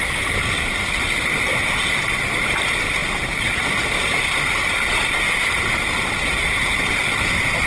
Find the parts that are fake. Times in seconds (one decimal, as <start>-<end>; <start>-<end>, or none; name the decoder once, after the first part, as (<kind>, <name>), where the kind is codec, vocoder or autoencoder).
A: none